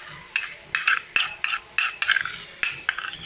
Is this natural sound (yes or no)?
yes